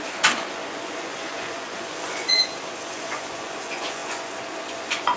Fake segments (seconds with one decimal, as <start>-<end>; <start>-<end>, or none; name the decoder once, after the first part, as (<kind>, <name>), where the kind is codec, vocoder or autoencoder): 0.0-5.2 (vocoder, Vocos)